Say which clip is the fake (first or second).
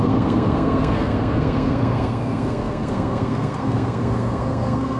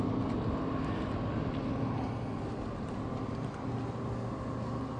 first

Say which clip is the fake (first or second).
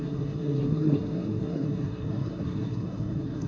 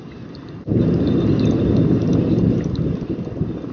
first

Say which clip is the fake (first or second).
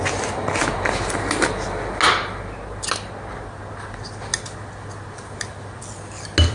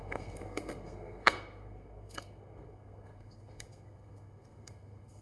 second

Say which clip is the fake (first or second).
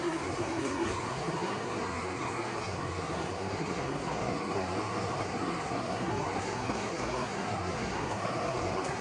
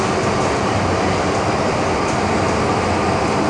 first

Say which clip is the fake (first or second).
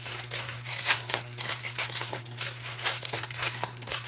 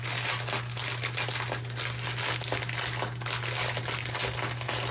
first